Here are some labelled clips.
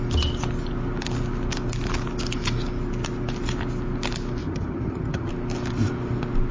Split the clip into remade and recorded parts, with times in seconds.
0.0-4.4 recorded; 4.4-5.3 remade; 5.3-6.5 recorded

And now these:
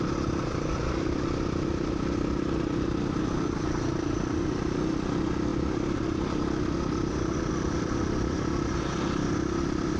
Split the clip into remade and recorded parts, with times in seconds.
0.0-10.0 recorded